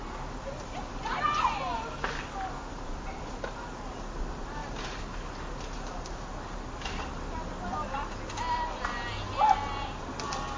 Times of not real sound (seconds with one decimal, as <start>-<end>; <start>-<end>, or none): none